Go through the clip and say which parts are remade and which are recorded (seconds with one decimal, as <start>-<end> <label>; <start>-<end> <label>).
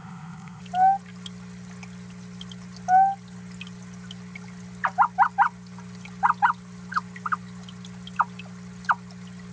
0.0-0.6 remade; 0.6-9.5 recorded